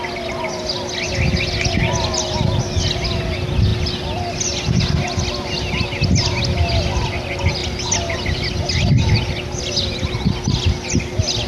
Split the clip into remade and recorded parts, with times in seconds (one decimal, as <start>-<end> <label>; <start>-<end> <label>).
0.0-11.5 recorded